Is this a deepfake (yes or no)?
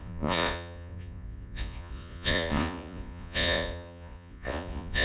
yes